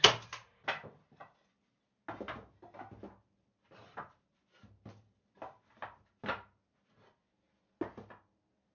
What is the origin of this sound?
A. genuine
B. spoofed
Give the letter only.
A